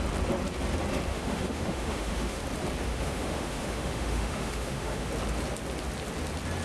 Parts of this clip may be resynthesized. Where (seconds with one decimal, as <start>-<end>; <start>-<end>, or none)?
1.1-2.4; 2.9-5.1